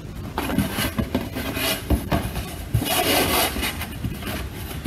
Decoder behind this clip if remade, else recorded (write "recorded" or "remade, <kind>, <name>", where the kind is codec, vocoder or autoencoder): remade, vocoder, BigVGAN v2